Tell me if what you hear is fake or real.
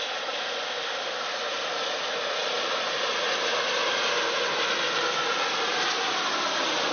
real